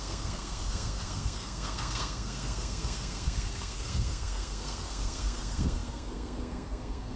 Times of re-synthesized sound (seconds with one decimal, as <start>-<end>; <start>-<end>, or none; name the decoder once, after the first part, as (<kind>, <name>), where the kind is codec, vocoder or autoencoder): 0.0-7.2 (codec, SNAC)